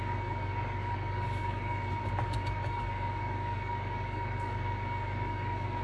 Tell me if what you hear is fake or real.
fake